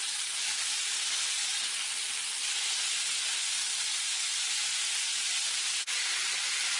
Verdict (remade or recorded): recorded